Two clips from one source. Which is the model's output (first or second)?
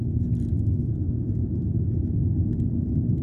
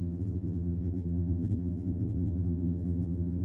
second